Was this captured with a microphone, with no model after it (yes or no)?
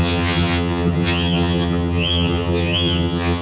no